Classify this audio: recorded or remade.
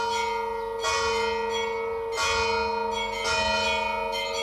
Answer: recorded